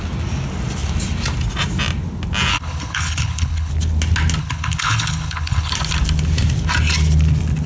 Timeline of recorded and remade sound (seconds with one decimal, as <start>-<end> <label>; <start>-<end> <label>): 0.0-2.5 recorded; 2.5-3.7 remade; 3.7-4.4 recorded; 4.4-5.7 remade; 5.7-7.7 recorded